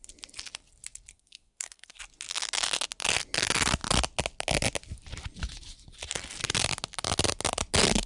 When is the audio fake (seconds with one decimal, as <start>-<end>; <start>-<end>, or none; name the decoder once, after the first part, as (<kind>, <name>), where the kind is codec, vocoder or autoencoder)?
1.1-2.0 (codec, SNAC)